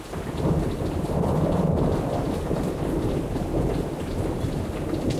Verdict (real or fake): real